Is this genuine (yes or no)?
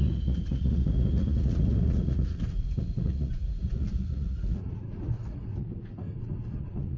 no